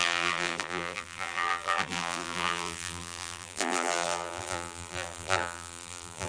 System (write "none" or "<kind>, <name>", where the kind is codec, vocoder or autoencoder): vocoder, BigVGAN v2